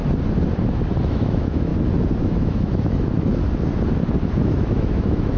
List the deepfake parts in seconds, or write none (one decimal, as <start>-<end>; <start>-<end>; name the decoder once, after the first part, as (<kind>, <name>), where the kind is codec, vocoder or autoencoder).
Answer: 1.0-1.7 (autoencoder, DAC-VAE); 2.2-3.3; 4.4-5.4